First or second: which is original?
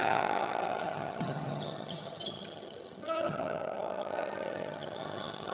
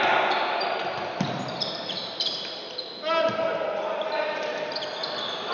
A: second